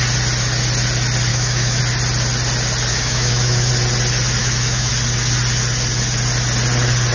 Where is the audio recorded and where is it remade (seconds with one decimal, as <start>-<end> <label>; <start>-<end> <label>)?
0.0-1.3 recorded; 1.3-1.8 remade; 1.8-2.9 recorded; 2.9-3.7 remade; 3.7-4.4 recorded; 4.4-4.9 remade; 4.9-7.1 recorded